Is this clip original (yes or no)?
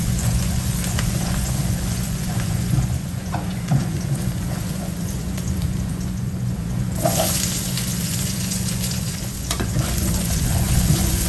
no